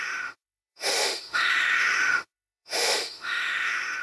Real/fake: fake